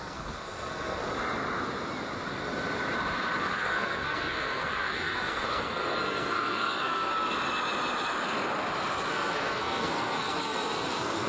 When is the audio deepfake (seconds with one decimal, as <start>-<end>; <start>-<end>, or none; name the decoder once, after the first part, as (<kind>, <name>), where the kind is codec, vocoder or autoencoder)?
0.0-1.0 (codec, SNAC); 3.4-7.1; 9.1-11.3